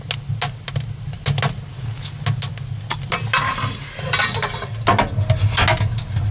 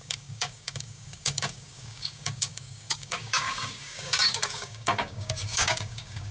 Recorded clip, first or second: first